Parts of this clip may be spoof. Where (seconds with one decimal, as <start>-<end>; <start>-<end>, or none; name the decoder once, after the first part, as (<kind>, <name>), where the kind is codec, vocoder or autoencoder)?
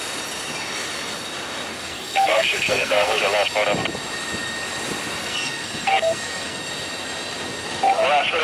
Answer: 1.7-3.2 (codec, SNAC); 5.2-6.6